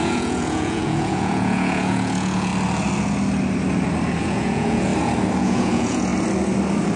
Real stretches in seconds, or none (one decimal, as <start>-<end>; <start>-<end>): 2.5-4.2; 4.9-5.4; 6.1-7.0